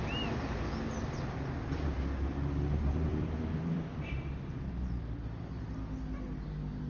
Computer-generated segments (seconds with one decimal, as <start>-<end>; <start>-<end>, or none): 3.1-5.7